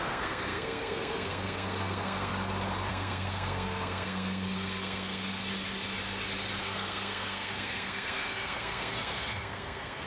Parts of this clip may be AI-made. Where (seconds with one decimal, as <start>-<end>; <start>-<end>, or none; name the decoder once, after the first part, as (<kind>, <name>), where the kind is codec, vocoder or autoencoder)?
0.0-2.3 (codec, SNAC); 2.9-5.4; 6.6-10.1